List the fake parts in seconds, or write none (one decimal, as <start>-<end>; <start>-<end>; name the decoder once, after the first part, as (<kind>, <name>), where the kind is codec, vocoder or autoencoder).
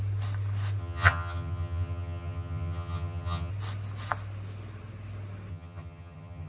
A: 0.8-3.5 (vocoder, HiFi-GAN); 5.5-6.5